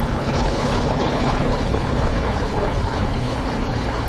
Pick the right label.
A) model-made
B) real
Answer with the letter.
A